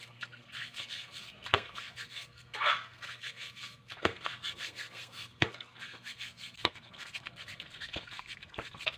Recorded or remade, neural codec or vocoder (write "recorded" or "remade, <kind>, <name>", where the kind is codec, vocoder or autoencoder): remade, codec, SNAC